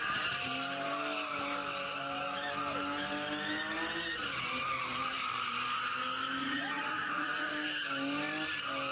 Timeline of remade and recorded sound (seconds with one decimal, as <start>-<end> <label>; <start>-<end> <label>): 0.0-6.4 recorded; 6.4-7.5 remade; 7.5-8.9 recorded